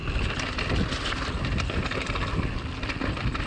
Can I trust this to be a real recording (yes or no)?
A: yes